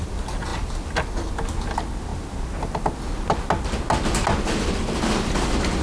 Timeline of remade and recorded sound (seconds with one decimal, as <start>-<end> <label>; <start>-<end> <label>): 0.0-5.8 recorded